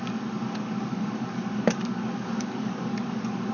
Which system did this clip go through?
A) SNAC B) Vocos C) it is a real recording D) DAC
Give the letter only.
D